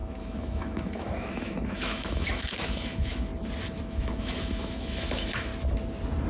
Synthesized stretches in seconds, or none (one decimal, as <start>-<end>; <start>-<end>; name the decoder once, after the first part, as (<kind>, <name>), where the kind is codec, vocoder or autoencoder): 0.0-3.3 (autoencoder, DAC-VAE); 3.8-5.5